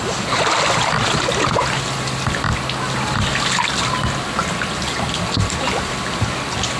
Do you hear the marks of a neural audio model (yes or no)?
no